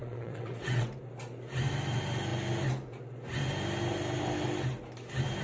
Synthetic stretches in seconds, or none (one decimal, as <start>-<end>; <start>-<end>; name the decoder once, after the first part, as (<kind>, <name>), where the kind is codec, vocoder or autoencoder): 0.0-0.9 (vocoder, WaveNeXt)